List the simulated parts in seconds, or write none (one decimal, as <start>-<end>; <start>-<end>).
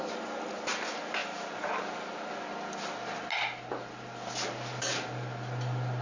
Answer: 1.2-2.3